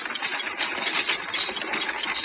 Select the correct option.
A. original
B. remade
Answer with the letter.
A